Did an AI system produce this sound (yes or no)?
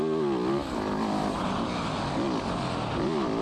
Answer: no